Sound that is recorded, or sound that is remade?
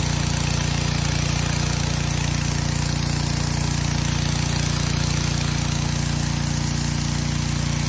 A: recorded